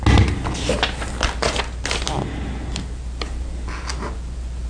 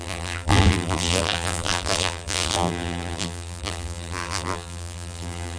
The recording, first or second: first